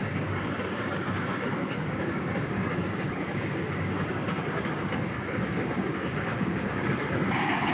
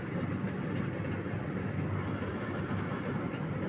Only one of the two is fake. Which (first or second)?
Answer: first